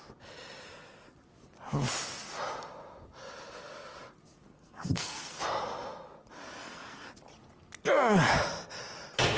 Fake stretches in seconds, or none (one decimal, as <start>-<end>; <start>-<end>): 4.5-5.4; 6.6-7.1